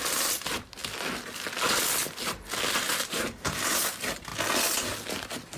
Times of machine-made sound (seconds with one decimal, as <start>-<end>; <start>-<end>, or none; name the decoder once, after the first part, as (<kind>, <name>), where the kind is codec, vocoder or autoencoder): 0.0-0.8 (vocoder, BigVGAN v2); 2.7-4.3; 5.1-5.6